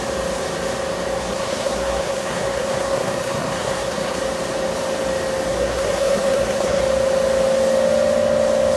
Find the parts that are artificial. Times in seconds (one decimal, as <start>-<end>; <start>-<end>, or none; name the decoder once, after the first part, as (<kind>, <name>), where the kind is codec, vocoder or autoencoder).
1.2-4.2 (codec, SNAC); 5.5-6.8